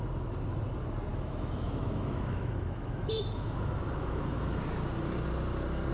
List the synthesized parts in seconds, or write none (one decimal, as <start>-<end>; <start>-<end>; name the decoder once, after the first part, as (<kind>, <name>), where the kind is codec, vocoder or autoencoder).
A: 1.1-4.6 (autoencoder, DAC-VAE)